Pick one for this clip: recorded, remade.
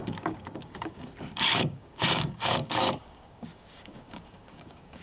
remade